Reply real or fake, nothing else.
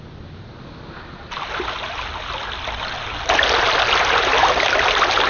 real